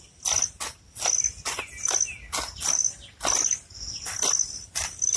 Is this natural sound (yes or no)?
yes